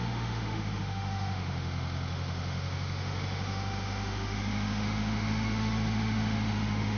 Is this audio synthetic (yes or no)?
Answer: yes